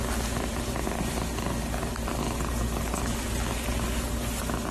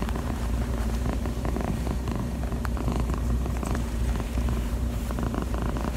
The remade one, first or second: second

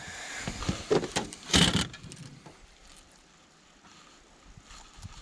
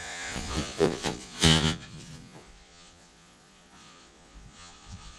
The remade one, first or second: second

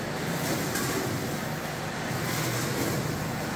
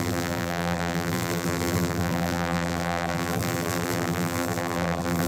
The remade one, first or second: second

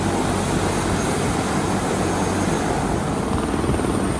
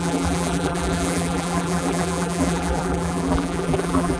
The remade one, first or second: second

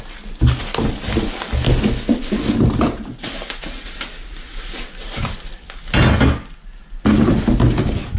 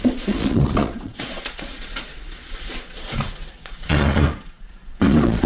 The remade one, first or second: second